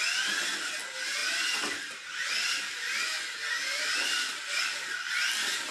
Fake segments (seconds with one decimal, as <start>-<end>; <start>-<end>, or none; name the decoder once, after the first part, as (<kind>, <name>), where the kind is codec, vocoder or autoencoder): none